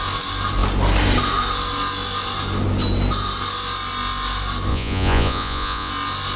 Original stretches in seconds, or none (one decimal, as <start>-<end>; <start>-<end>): 0.0-4.7; 5.9-6.4